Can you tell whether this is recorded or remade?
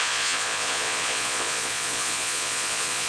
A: remade